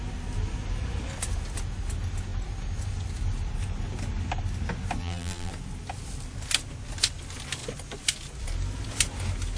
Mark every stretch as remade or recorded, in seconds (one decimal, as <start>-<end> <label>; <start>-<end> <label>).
0.0-5.0 recorded; 5.0-5.5 remade; 5.5-9.6 recorded